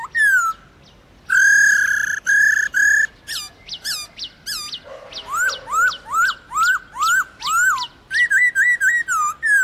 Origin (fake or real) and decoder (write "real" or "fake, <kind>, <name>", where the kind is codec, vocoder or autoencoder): real